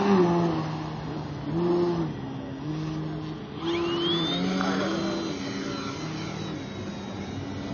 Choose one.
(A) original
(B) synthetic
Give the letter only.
A